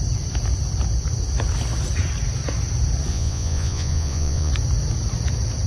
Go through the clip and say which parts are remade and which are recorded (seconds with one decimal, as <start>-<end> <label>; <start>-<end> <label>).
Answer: 0.0-3.1 recorded; 3.1-4.5 remade; 4.5-5.7 recorded